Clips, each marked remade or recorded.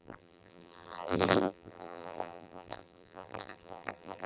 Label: remade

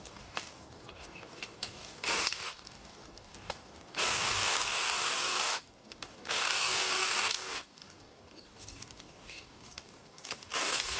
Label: remade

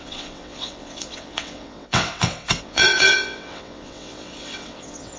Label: remade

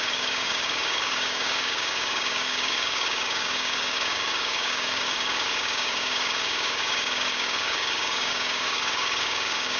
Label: remade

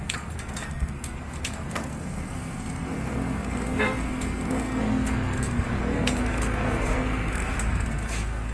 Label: remade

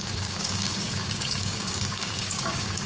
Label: remade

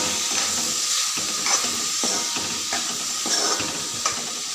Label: recorded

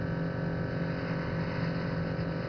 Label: recorded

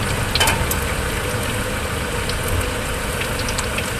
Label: recorded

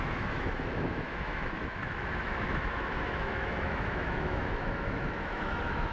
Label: remade